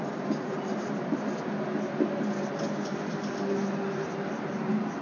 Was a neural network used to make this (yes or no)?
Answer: no